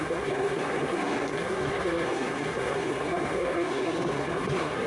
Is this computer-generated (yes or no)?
yes